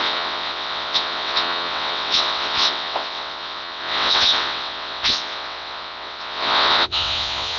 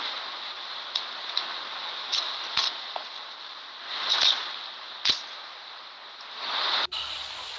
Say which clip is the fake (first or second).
first